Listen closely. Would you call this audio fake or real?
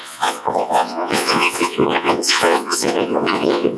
fake